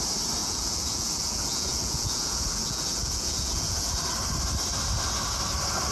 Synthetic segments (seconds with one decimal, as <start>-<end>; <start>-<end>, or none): 0.4-3.9